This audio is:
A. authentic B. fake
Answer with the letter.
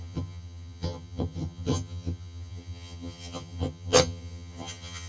B